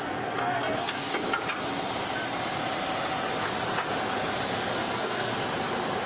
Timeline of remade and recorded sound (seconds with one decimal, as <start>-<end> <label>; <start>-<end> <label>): 0.0-1.0 remade; 1.0-4.7 recorded; 4.7-5.3 remade; 5.3-6.1 recorded